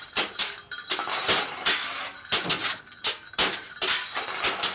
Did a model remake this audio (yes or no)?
no